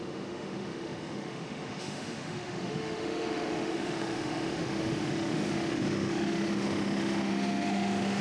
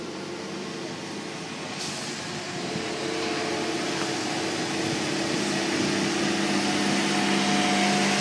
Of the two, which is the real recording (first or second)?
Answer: second